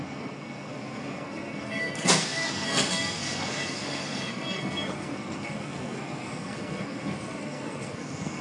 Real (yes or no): no